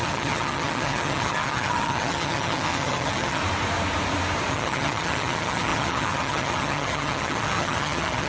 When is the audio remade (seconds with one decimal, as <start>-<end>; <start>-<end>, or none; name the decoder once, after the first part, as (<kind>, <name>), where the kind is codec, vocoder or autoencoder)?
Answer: 0.0-3.4 (vocoder, HiFi-GAN); 4.5-8.3